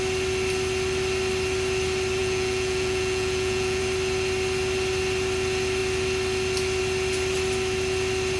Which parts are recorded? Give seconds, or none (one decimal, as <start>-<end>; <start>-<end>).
0.0-2.2; 3.8-8.4